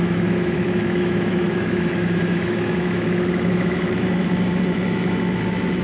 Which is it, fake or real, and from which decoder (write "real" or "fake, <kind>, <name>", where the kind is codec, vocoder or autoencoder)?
fake, autoencoder, DAC-VAE